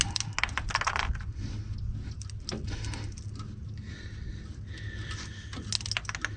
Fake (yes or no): no